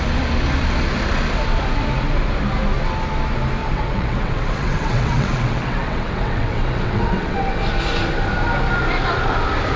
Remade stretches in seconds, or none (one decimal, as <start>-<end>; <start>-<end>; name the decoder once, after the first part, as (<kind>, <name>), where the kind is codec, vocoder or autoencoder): 3.6-7.5 (vocoder, WaveNeXt)